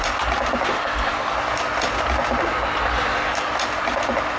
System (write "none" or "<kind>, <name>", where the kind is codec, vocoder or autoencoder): none